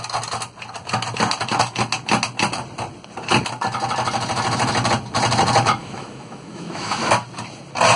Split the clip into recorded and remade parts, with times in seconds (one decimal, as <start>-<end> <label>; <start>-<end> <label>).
0.0-5.8 recorded; 5.8-7.1 remade; 7.1-8.0 recorded